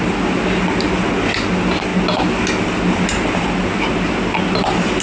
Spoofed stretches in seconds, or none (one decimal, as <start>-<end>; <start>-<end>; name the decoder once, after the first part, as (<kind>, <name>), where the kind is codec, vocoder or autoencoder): none